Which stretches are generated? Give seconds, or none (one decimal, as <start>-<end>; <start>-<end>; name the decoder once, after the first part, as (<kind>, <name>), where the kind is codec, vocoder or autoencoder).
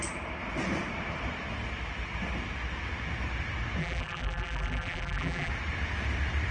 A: 3.8-5.5 (vocoder, BigVGAN v2)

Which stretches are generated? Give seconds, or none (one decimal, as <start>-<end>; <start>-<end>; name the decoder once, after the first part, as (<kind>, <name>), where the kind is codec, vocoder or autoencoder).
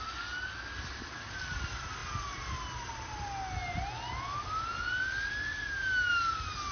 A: none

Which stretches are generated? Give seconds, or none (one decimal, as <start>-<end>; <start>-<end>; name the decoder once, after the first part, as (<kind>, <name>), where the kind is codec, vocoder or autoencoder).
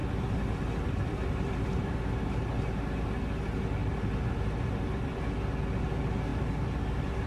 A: 0.0-2.2 (vocoder, BigVGAN v2); 3.8-5.2; 6.3-7.3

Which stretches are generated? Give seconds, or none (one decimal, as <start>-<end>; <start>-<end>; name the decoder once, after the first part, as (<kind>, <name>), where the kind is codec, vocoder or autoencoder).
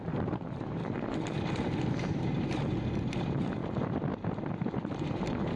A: 0.0-0.8 (vocoder, BigVGAN v2); 2.0-3.6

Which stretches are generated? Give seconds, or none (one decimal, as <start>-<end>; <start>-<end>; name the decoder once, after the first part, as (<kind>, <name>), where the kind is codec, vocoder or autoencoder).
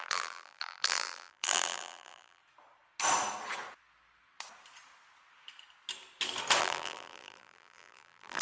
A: 0.0-2.4 (vocoder, BigVGAN v2); 6.6-8.4